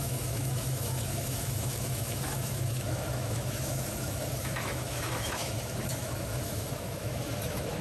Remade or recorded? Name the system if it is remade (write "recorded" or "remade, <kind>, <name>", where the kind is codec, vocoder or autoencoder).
remade, autoencoder, DAC-VAE